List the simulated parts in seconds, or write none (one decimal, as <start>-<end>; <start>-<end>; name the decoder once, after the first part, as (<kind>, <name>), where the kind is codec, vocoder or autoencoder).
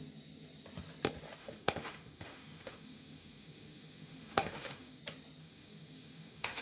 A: 1.4-5.0 (autoencoder, DAC-VAE); 5.4-6.6